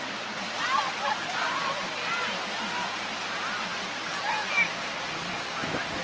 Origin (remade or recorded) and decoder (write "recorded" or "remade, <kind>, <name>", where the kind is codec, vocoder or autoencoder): recorded